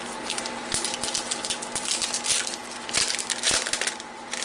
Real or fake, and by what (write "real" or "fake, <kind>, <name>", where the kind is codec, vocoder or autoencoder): real